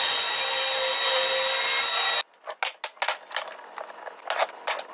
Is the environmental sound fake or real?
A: real